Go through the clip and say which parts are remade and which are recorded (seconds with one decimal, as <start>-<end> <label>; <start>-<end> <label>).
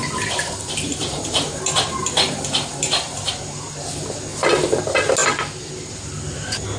0.0-3.3 remade; 3.3-4.3 recorded; 4.3-4.8 remade; 4.8-6.8 recorded